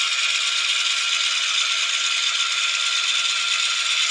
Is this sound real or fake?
real